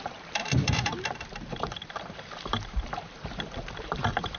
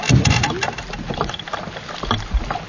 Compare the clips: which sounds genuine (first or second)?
second